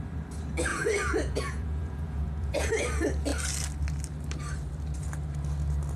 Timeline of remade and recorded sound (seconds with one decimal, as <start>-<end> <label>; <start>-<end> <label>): 0.0-0.7 recorded; 0.7-2.7 remade; 2.7-6.0 recorded